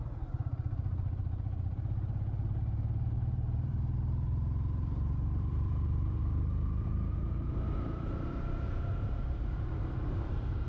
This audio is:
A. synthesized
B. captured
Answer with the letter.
A